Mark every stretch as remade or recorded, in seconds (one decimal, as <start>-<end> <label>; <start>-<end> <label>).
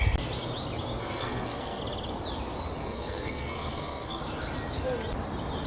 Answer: 0.0-1.0 recorded; 1.0-1.8 remade; 1.8-2.8 recorded; 2.8-4.2 remade; 4.2-5.7 recorded